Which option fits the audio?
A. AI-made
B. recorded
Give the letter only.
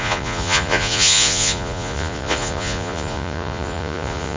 A